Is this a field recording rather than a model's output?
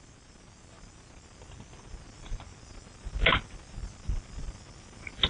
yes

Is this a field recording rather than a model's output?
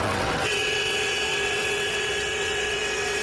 no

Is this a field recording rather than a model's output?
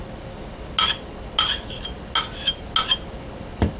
yes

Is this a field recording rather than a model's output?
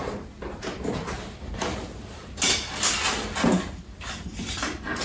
yes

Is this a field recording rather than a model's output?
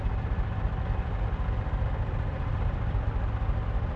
yes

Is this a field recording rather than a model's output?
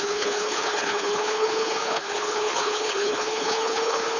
no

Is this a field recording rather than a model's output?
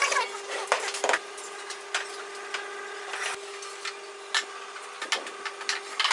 yes